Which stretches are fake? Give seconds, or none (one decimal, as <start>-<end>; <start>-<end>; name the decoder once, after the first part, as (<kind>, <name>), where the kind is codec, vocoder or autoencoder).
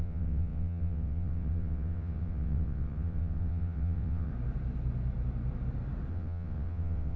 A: 0.0-4.3 (vocoder, WaveNeXt); 6.1-7.2